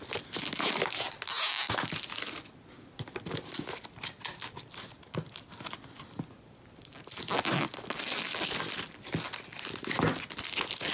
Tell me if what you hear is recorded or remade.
recorded